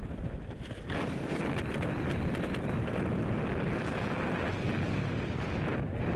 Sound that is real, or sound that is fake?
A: real